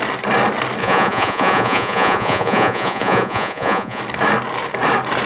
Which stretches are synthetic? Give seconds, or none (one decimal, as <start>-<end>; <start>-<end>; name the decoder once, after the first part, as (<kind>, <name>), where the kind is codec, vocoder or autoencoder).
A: 0.8-4.0 (vocoder, Vocos)

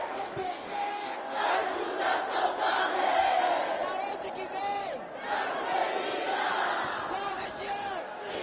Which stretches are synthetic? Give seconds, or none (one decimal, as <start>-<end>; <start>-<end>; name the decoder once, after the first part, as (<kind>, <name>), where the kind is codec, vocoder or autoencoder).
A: 0.0-1.8 (codec, DAC); 2.8-3.4; 8.0-8.4